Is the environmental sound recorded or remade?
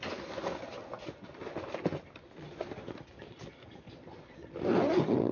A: recorded